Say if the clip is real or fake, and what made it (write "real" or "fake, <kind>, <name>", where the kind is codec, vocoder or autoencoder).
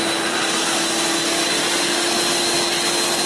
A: real